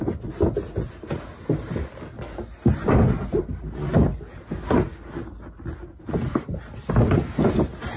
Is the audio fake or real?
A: real